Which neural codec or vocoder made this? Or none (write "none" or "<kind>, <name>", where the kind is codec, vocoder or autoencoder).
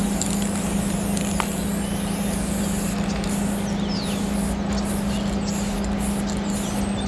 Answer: none